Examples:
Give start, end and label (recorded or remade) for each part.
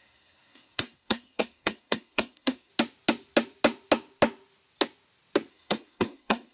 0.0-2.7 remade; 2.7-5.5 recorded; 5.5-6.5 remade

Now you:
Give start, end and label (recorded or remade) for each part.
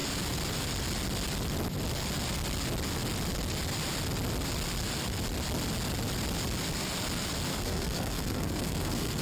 0.0-7.5 recorded; 7.5-9.2 remade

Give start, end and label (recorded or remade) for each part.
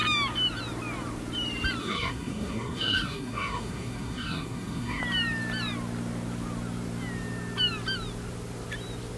0.0-1.8 recorded; 1.8-5.0 remade; 5.0-9.2 recorded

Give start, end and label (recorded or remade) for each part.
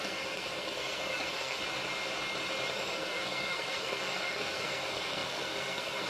0.0-1.6 remade; 1.6-2.7 recorded; 2.7-6.1 remade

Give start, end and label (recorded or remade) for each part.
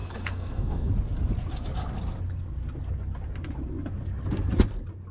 0.0-0.9 remade; 0.9-5.1 recorded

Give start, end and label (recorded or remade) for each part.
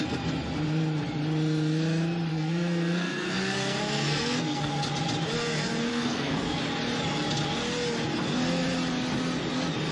0.0-2.3 recorded; 2.3-4.7 remade; 4.7-5.9 recorded; 5.9-6.6 remade; 6.6-9.9 recorded